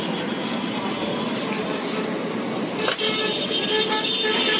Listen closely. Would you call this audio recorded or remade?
recorded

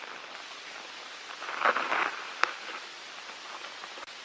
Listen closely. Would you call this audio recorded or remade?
recorded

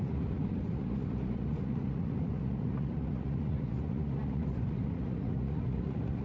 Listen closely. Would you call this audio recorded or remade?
remade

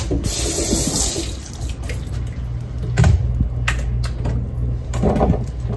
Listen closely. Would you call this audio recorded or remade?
recorded